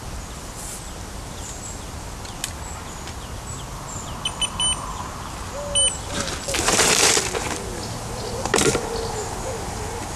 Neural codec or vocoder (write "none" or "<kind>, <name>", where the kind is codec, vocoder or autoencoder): none